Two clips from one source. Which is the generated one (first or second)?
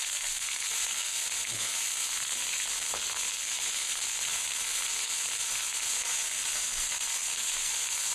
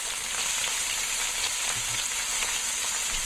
first